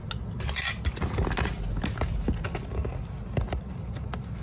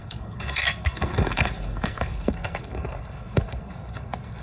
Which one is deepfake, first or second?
second